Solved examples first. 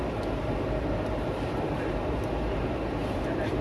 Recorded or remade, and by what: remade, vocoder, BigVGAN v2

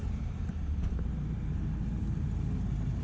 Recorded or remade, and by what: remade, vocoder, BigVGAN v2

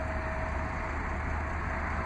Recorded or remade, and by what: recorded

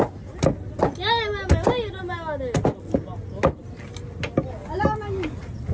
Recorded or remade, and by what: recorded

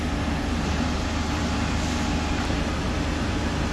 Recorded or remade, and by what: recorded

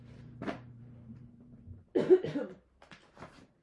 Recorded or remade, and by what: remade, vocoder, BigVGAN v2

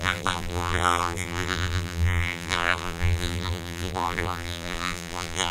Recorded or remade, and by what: remade, vocoder, BigVGAN v2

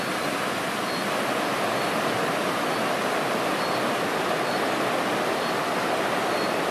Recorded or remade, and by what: recorded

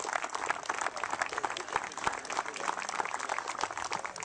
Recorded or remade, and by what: recorded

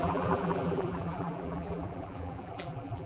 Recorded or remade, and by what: remade, vocoder, BigVGAN v2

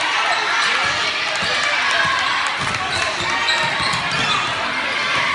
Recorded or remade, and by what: recorded